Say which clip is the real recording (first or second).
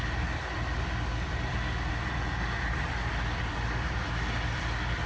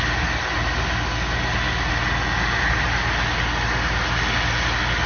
second